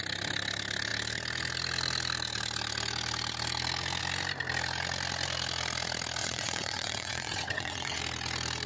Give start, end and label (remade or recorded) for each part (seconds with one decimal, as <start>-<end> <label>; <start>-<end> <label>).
0.0-6.2 recorded; 6.2-8.0 remade; 8.0-8.7 recorded